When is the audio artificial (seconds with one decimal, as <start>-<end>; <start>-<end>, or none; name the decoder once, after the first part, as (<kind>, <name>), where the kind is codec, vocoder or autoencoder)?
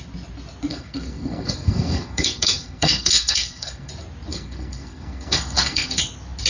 0.7-3.9 (codec, SNAC); 4.3-6.0